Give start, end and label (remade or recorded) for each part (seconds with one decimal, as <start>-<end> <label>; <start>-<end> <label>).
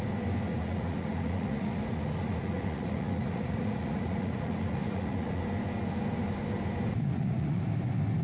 0.0-0.5 recorded; 0.5-5.4 remade; 5.4-6.9 recorded; 6.9-7.6 remade; 7.6-8.2 recorded